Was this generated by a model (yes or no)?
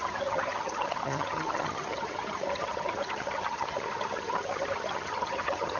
yes